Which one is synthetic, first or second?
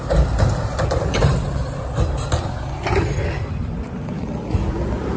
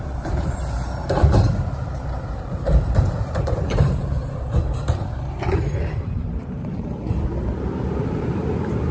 second